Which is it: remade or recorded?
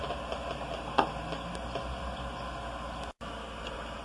recorded